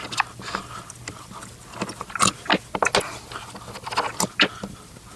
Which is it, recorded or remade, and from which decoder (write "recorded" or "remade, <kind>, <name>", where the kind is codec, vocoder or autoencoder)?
recorded